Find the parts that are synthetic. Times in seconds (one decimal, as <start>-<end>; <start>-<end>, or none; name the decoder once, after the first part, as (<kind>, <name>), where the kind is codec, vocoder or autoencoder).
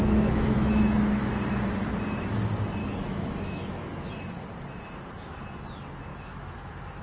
0.0-1.3 (autoencoder, DAC-VAE); 2.8-4.1; 6.1-7.0